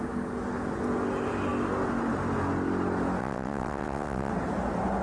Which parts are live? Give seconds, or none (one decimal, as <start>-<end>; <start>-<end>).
0.0-3.2; 4.3-5.0